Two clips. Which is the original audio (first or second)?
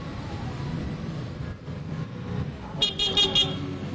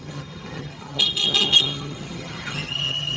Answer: first